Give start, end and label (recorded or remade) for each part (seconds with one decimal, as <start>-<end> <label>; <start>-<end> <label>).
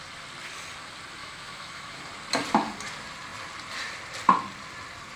0.0-1.2 recorded; 1.2-2.0 remade; 2.0-5.2 recorded